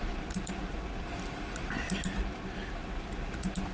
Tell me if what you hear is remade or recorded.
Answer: recorded